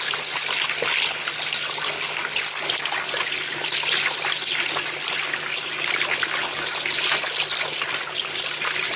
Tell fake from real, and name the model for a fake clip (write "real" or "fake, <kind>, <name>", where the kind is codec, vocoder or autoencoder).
real